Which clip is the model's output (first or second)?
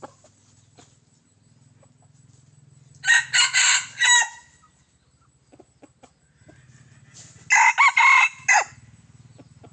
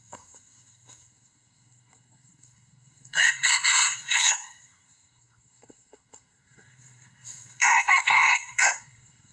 second